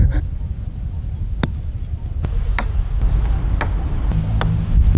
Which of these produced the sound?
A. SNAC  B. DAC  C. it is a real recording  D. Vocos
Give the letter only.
C